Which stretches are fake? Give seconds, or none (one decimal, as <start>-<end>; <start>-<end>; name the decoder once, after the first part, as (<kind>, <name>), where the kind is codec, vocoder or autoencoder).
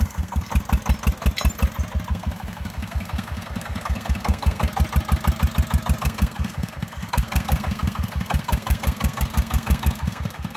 0.0-0.5 (codec, SNAC); 2.1-4.7; 6.0-10.6